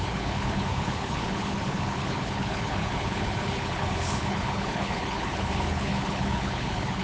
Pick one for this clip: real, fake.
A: fake